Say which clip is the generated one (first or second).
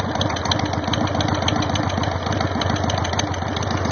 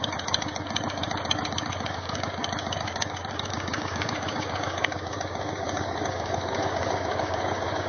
second